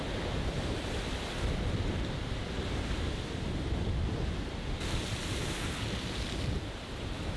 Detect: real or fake real